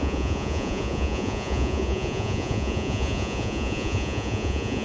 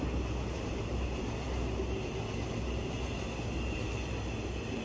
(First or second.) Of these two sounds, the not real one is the first